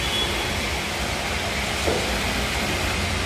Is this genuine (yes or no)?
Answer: no